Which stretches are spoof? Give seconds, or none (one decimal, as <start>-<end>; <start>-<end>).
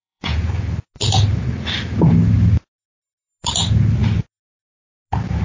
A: 0.0-0.6